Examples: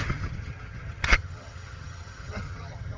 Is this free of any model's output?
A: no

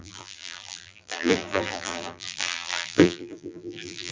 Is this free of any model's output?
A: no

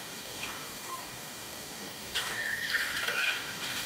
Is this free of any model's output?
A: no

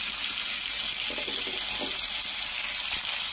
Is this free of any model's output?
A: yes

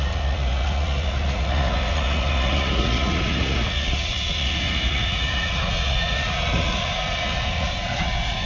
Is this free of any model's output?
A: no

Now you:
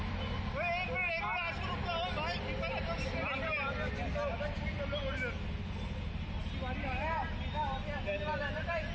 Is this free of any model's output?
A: yes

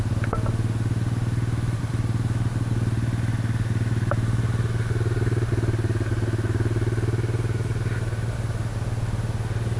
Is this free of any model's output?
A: yes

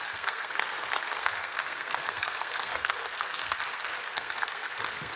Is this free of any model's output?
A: no